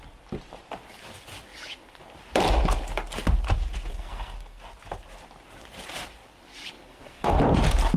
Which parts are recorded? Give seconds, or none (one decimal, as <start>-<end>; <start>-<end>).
0.0-3.9; 4.6-6.9; 7.4-8.0

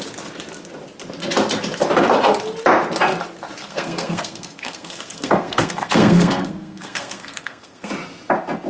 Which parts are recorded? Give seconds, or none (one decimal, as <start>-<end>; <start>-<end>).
0.0-3.6; 7.9-8.7

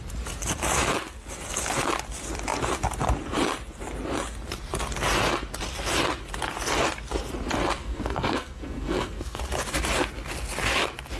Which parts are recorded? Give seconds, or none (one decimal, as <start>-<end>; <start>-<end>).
0.0-7.8; 9.4-11.2

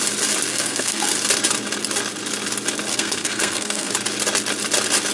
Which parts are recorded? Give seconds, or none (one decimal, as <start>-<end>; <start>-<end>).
0.0-0.5; 1.1-2.9; 3.9-5.1

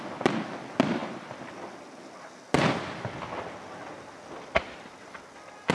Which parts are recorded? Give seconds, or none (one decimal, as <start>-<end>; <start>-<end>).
0.0-5.7

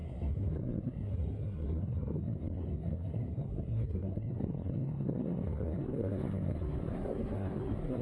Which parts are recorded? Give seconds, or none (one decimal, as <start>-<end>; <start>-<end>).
none

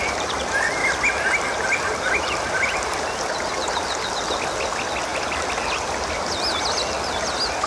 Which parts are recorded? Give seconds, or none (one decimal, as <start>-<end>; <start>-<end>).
0.0-7.7